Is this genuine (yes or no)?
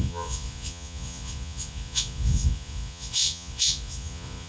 no